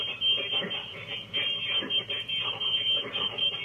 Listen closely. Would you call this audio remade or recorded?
remade